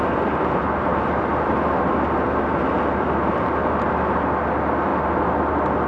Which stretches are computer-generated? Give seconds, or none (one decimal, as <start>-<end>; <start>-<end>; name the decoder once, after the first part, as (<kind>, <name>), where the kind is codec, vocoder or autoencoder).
none